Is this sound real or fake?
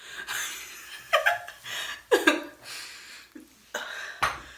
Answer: real